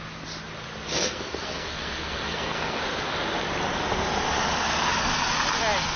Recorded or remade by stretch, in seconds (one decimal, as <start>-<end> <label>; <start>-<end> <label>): 0.0-0.9 recorded; 0.9-2.8 remade; 2.8-6.0 recorded